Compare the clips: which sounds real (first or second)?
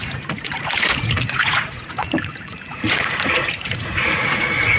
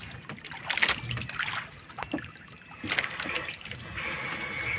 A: second